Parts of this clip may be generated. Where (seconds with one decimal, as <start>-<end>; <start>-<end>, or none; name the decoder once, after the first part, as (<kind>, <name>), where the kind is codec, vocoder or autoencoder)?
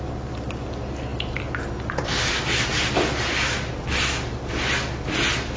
none